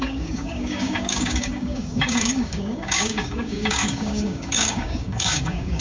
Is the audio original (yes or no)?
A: no